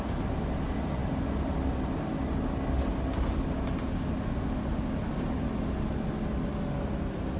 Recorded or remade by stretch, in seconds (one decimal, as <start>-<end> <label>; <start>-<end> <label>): 0.0-7.4 recorded